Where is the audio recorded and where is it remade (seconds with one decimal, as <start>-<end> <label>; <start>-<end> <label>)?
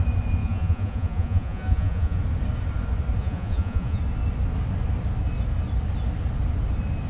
0.0-0.4 recorded; 0.4-2.2 remade; 2.2-3.2 recorded; 3.2-4.0 remade; 4.0-7.1 recorded